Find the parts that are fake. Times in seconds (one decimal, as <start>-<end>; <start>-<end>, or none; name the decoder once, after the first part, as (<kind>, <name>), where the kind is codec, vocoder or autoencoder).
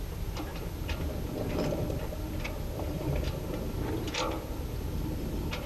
none